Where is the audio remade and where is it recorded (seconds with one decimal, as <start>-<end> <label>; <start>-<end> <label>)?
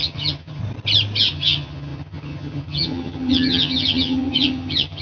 0.0-0.6 remade; 0.6-1.3 recorded; 1.3-5.0 remade